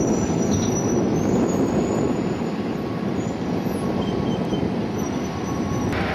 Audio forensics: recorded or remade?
recorded